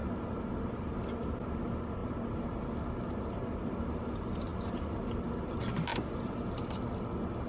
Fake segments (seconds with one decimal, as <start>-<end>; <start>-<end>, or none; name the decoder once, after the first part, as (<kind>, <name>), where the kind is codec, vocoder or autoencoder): none